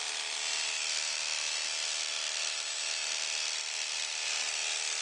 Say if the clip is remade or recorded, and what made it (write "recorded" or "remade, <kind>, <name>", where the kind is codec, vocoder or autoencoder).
recorded